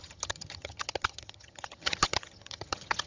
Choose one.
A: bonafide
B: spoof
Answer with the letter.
B